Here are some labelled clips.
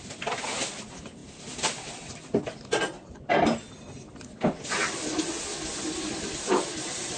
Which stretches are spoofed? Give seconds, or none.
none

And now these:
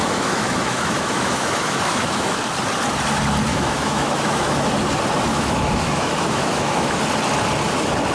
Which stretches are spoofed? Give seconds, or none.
0.0-2.4 (autoencoder, DAC-VAE); 3.5-4.7; 5.3-7.0

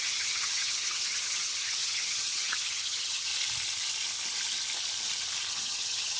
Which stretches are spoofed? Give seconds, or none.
0.0-3.3 (vocoder, HiFi-GAN); 5.5-6.2

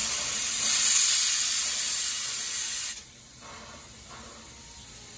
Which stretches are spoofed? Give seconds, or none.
none

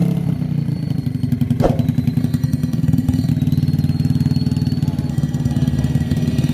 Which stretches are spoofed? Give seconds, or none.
2.2-3.3 (codec, SNAC); 5.1-6.5

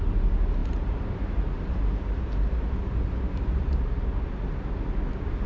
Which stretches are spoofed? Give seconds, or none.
0.6-3.6 (vocoder, BigVGAN v2)

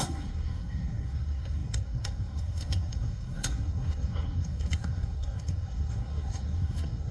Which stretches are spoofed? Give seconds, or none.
0.0-7.1 (codec, SNAC)

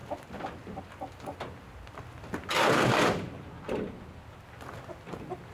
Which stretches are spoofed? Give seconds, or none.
none